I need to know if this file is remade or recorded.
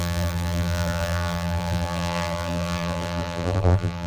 remade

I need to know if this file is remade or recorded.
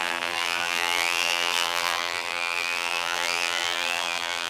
remade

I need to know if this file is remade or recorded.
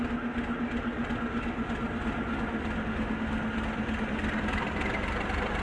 recorded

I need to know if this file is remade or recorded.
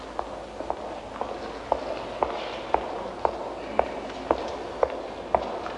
recorded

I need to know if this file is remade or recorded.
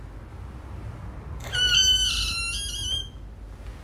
recorded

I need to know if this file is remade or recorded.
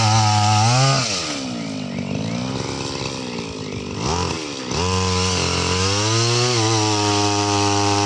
recorded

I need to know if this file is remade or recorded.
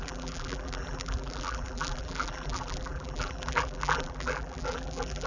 remade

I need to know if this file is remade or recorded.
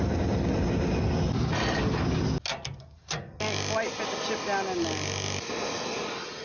recorded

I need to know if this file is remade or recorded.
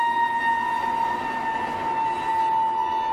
recorded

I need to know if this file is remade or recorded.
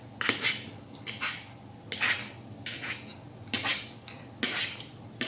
recorded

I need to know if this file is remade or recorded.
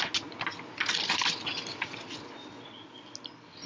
recorded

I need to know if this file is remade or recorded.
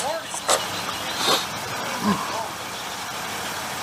remade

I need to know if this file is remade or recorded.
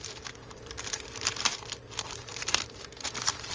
remade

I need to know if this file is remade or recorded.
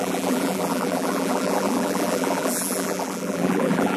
remade